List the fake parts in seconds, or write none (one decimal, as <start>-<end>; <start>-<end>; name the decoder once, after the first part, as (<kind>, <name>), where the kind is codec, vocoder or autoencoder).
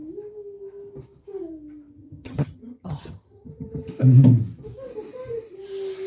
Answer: 1.9-3.9 (vocoder, HiFi-GAN)